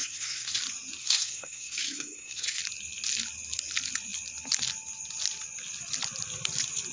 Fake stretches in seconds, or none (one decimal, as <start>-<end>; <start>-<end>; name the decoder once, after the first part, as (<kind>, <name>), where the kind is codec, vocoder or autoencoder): 0.0-0.6 (codec, SNAC); 1.0-2.6